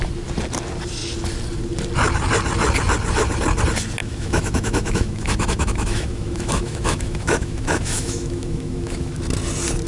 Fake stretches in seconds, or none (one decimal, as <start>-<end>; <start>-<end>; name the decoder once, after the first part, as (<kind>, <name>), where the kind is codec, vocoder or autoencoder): 4.0-9.2 (autoencoder, DAC-VAE)